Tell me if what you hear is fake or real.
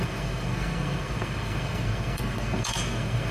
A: fake